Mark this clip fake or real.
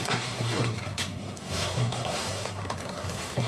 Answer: fake